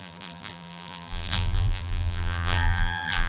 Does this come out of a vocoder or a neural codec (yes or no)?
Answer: yes